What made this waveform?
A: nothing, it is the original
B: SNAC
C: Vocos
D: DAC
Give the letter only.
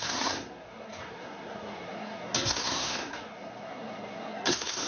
B